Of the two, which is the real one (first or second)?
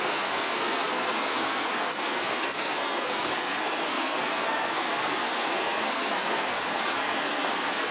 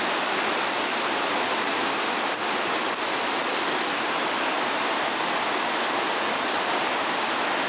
second